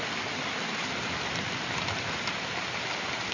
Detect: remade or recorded recorded